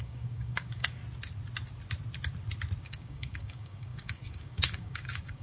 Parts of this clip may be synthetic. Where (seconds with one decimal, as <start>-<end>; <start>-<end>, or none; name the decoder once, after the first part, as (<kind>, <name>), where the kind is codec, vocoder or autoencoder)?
0.0-1.0 (codec, DAC); 2.8-5.4